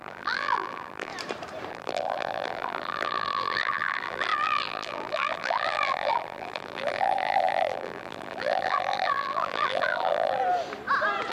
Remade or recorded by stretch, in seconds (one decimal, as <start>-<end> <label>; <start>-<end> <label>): 0.0-1.1 remade; 1.1-1.7 recorded; 1.7-10.4 remade; 10.4-11.3 recorded